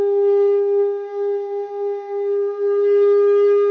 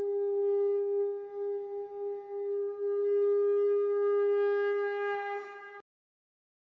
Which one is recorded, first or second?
second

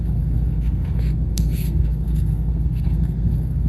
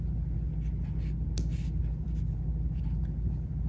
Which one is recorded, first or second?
second